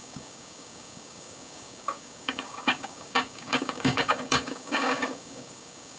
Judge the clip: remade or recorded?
remade